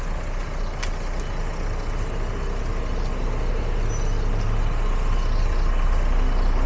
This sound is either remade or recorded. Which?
recorded